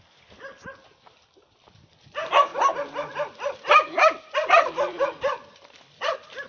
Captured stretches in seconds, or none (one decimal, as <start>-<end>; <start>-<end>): 0.0-2.5